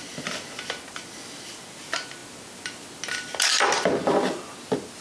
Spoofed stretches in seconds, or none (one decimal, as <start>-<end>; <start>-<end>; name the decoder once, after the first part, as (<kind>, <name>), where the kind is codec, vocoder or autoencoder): none